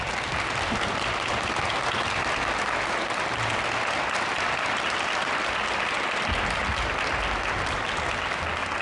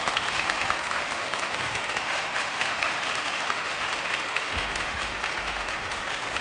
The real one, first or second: first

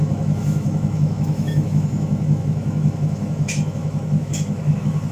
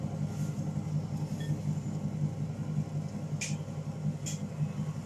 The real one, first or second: second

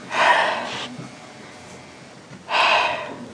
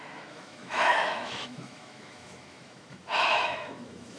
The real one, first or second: first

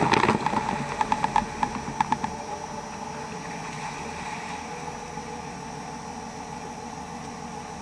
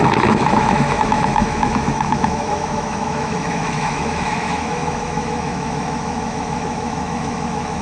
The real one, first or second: first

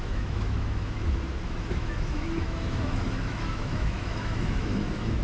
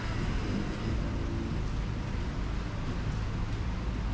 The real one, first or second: second